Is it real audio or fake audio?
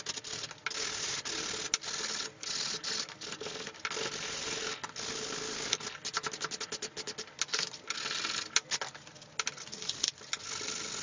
real